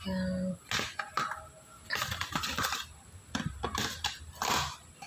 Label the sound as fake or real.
real